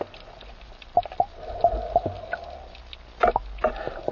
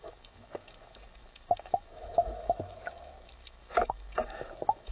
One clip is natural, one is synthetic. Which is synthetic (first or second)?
second